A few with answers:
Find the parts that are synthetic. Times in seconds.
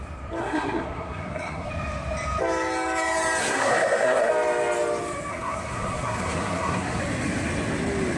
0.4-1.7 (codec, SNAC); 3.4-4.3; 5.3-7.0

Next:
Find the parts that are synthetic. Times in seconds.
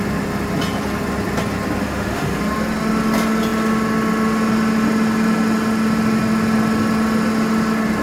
1.8-2.4 (autoencoder, DAC-VAE)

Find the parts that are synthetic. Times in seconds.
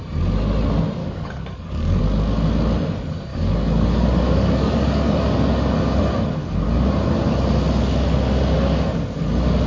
1.0-2.0 (codec, DAC); 3.3-5.2